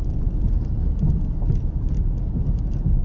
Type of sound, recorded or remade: recorded